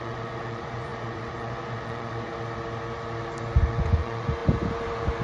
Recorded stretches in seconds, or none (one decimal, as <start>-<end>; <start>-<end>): 2.3-3.7; 4.4-5.2